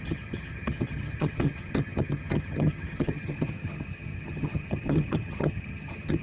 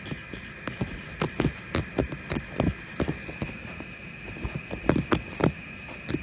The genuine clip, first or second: second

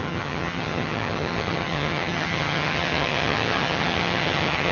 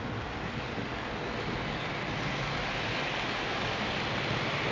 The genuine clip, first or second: second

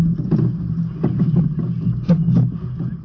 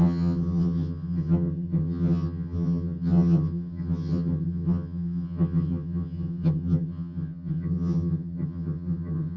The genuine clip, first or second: first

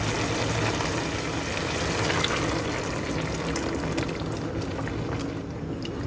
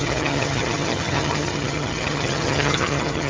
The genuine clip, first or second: first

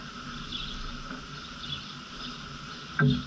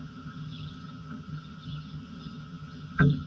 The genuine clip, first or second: first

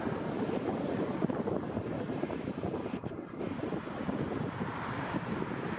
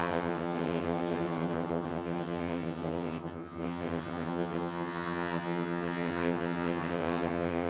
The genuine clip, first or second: first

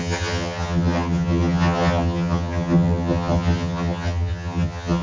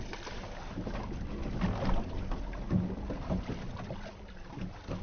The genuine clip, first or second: second